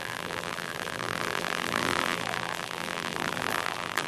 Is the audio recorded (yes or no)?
no